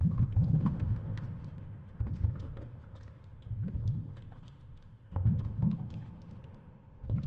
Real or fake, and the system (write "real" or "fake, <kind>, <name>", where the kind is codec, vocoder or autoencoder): fake, autoencoder, DAC-VAE